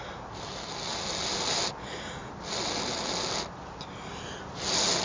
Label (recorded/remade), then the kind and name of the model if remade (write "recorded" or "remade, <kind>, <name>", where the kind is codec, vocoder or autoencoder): recorded